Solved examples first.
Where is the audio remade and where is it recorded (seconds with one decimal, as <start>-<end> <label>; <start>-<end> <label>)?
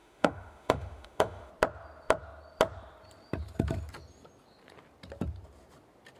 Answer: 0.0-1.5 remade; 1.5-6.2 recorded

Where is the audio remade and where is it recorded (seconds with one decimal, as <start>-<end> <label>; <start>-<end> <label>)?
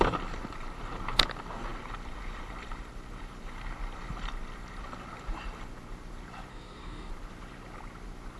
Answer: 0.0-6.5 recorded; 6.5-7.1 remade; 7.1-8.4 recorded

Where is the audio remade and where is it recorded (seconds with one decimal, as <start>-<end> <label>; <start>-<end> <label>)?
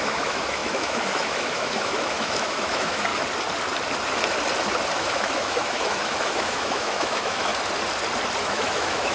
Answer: 0.0-3.1 remade; 3.1-4.9 recorded; 4.9-7.5 remade; 7.5-8.4 recorded; 8.4-9.1 remade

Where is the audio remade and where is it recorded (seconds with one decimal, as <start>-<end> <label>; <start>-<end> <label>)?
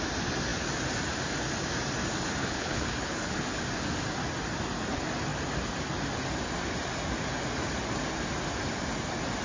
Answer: 0.0-2.4 recorded; 2.4-3.6 remade; 3.6-9.4 recorded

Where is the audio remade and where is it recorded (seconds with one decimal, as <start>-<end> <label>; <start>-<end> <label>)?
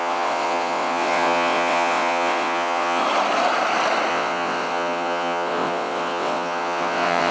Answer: 0.0-3.0 remade; 3.0-4.1 recorded; 4.1-7.3 remade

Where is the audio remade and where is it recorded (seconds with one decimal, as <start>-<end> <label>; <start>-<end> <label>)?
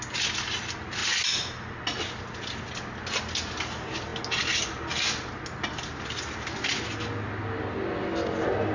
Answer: 0.0-8.7 recorded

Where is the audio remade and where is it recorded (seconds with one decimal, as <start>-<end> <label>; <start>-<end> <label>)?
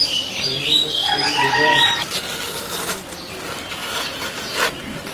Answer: 0.0-3.8 remade; 3.8-4.3 recorded; 4.3-5.1 remade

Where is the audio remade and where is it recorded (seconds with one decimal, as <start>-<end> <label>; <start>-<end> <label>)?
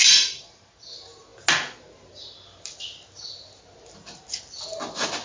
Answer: 0.0-5.2 recorded